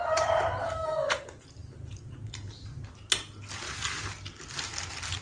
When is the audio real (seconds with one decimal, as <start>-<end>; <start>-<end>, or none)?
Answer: 0.0-0.6; 1.2-5.2